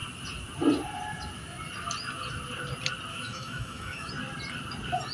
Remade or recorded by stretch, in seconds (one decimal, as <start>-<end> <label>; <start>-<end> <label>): 0.0-3.1 recorded; 3.1-4.1 remade; 4.1-5.1 recorded